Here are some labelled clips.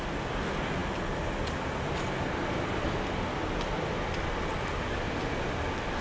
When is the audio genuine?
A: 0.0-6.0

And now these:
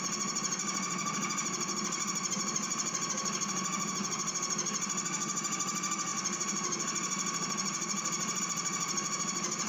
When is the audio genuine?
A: 0.0-9.7

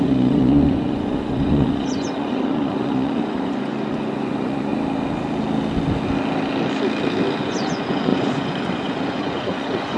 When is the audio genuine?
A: 4.7-7.4